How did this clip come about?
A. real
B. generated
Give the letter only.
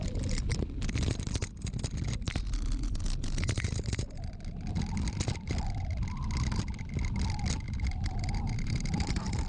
A